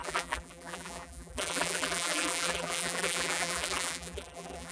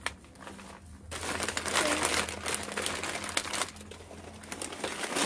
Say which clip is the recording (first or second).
second